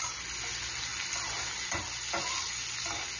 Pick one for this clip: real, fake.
real